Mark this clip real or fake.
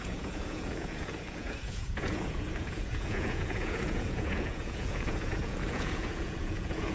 fake